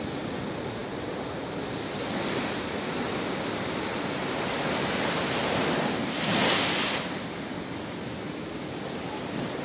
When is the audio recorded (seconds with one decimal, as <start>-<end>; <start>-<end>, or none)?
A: 0.0-9.6